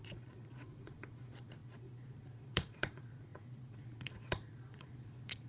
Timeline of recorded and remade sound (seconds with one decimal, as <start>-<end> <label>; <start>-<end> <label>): 0.0-5.5 remade